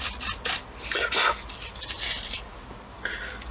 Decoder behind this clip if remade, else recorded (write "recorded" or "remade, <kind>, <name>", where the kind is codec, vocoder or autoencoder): recorded